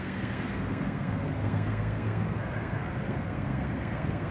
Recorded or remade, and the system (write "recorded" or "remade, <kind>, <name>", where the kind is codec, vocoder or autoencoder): remade, codec, SNAC